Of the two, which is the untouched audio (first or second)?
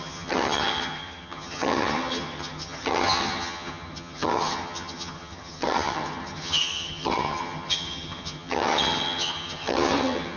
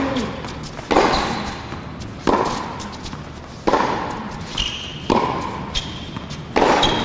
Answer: second